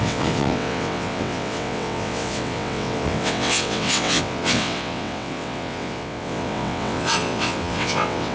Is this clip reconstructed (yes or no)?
yes